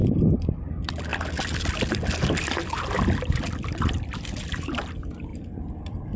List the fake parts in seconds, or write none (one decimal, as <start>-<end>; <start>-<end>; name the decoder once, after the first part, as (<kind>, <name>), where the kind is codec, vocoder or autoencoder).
0.6-5.3 (vocoder, BigVGAN v2); 5.8-6.2